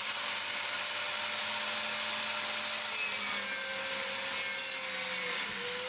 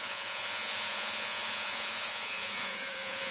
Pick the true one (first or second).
first